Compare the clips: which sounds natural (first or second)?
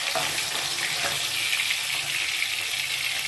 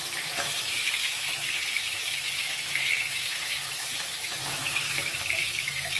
first